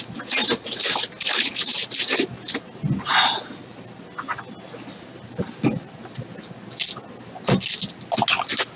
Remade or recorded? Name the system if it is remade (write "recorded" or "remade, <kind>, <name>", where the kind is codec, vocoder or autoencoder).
recorded